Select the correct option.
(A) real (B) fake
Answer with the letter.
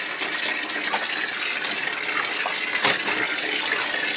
A